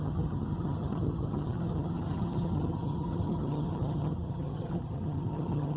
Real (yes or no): no